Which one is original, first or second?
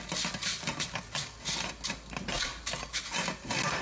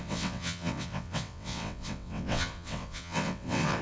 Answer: first